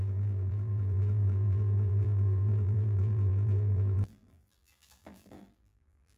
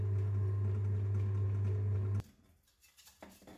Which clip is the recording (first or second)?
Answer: second